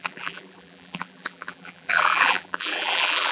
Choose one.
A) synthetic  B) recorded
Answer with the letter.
A